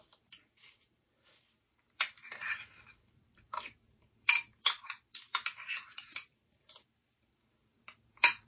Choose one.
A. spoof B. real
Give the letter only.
A